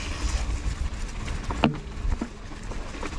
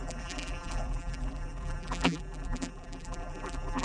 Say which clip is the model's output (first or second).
second